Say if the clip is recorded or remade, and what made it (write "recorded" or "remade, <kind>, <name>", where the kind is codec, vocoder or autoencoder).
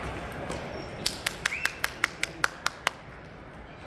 recorded